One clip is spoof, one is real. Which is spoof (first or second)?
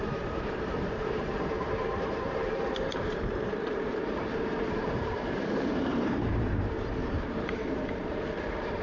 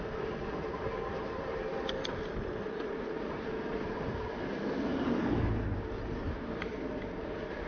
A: first